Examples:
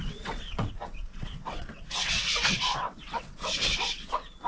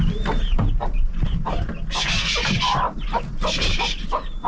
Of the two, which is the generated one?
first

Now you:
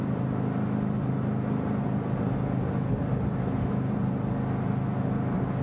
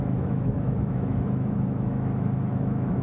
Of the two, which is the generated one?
second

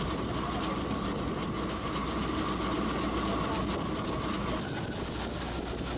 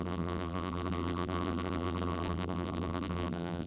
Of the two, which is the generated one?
second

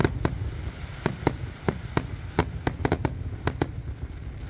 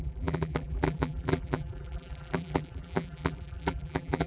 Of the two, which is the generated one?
second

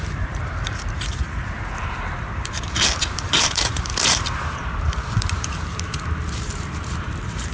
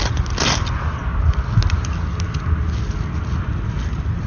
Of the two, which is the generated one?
first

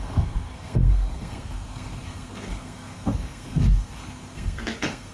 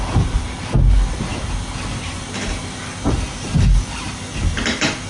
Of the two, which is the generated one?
first